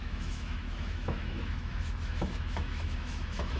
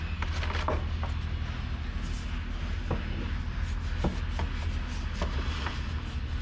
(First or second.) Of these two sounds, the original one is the second